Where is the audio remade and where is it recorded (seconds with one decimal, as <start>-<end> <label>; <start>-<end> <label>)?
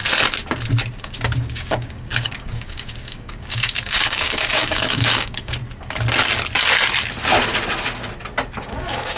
0.0-1.0 recorded; 1.0-5.6 remade; 5.6-8.6 recorded; 8.6-9.2 remade